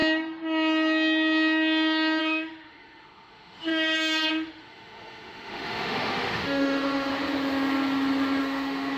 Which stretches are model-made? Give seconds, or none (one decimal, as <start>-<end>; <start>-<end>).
2.2-3.7; 4.3-7.1; 8.4-9.0